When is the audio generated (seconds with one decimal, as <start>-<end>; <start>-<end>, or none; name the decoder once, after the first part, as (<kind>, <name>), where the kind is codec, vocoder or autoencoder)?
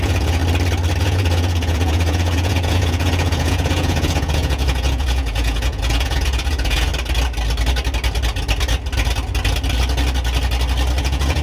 0.0-0.4 (vocoder, Vocos); 1.0-6.9; 11.0-11.4